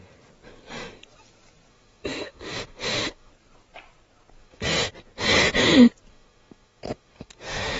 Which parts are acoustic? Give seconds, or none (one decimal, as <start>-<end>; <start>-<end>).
0.0-1.7; 3.3-4.4; 4.9-6.1